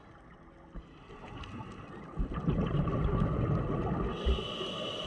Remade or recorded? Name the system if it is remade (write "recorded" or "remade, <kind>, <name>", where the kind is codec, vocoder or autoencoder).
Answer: recorded